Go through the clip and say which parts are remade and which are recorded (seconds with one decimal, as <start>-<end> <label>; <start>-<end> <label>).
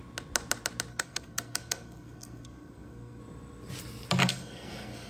0.0-0.9 recorded; 0.9-3.2 remade; 3.2-4.2 recorded; 4.2-5.1 remade